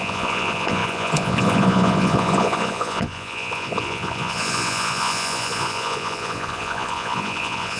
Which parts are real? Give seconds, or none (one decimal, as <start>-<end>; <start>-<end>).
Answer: none